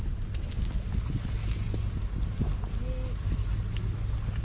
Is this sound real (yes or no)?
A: yes